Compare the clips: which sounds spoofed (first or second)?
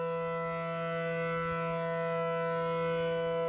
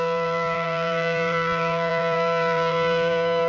second